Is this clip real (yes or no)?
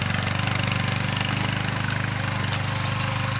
yes